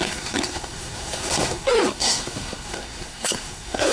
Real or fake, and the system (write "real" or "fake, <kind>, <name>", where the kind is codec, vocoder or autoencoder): fake, codec, SNAC